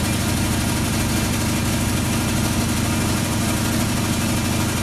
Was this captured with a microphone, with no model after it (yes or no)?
yes